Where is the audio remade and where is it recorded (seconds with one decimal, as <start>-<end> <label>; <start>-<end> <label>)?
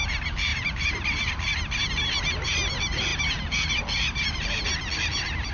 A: 0.0-0.5 recorded; 0.5-1.3 remade; 1.3-3.1 recorded; 3.1-3.8 remade; 3.8-5.5 recorded